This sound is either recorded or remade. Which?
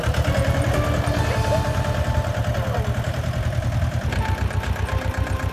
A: recorded